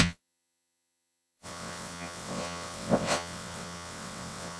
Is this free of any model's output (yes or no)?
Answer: no